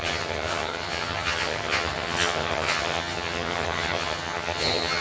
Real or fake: fake